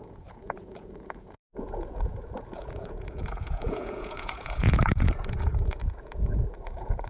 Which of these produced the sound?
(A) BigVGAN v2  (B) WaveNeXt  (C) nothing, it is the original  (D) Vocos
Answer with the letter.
D